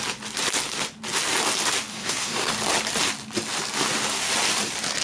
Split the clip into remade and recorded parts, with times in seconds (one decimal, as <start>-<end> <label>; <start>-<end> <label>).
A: 0.0-1.9 recorded; 1.9-2.5 remade; 2.5-5.0 recorded